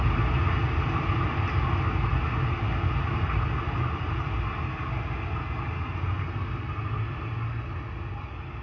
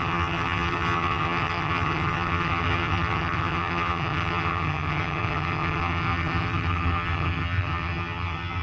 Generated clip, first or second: second